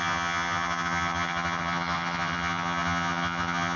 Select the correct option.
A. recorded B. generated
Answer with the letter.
B